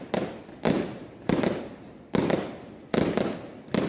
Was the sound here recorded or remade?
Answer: recorded